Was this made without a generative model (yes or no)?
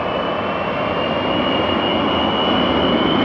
yes